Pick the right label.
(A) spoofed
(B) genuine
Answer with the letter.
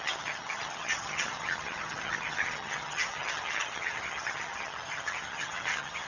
A